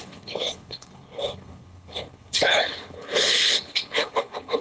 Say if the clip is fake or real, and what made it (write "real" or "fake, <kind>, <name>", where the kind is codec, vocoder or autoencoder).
fake, codec, HILCodec